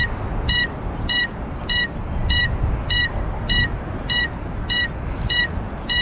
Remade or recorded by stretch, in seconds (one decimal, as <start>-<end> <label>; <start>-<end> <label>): 0.0-6.0 recorded